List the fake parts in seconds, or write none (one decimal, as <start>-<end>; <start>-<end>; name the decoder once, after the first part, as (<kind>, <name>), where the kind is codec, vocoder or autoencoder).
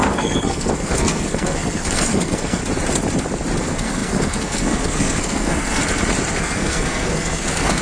0.0-2.6 (codec, SNAC); 3.6-5.8; 6.4-7.8